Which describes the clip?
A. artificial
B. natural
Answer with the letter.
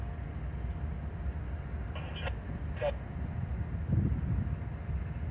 B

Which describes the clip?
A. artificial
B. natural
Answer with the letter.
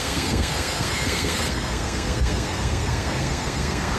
A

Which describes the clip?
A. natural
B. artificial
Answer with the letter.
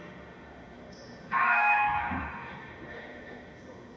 B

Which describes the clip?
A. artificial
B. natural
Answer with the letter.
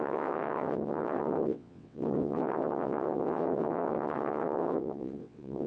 A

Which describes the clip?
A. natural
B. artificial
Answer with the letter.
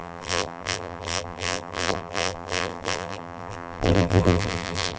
B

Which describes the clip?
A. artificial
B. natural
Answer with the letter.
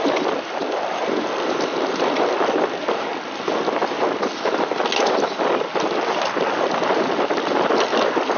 B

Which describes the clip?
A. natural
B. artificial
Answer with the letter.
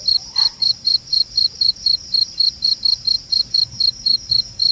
B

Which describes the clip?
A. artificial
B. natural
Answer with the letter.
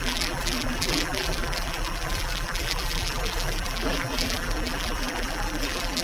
A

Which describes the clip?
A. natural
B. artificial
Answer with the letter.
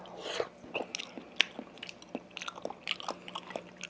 A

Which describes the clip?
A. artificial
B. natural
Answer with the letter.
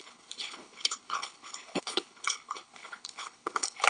A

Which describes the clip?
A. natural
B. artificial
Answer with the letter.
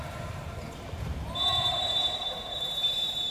B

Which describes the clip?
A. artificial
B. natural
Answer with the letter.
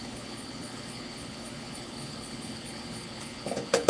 A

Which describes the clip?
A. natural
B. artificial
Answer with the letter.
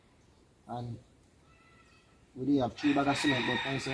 B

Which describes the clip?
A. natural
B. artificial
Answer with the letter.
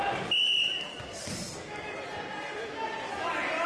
A